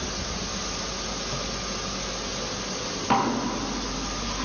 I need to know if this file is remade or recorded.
recorded